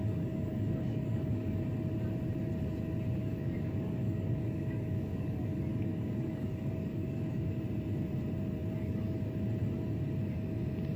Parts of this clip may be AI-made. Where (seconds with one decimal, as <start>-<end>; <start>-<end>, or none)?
0.0-1.6; 3.2-7.6; 8.6-9.3